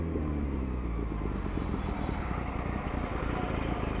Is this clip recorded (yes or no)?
yes